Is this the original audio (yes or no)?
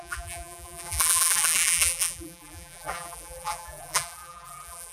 no